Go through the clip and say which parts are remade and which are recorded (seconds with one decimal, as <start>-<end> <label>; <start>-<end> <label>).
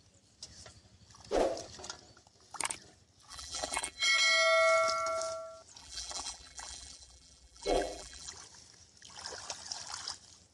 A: 0.0-3.3 recorded; 3.3-4.1 remade; 4.1-5.8 recorded; 5.8-8.3 remade; 8.3-10.5 recorded